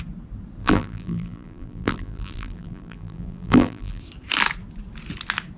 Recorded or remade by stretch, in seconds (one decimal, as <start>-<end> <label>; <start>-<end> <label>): 0.0-0.6 recorded; 0.6-4.0 remade; 4.0-5.6 recorded